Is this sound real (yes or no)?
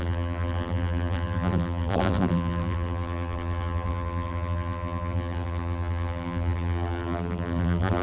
no